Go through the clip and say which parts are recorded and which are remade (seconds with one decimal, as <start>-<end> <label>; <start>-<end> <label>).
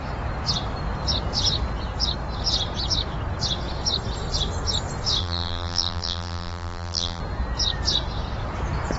0.0-5.2 recorded; 5.2-7.2 remade; 7.2-9.0 recorded